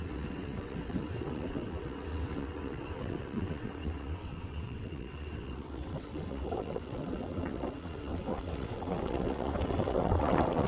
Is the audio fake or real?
fake